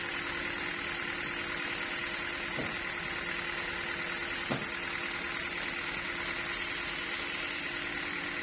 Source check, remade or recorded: recorded